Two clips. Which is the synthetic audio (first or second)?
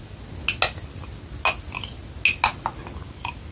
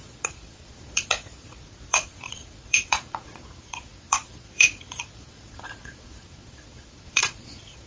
second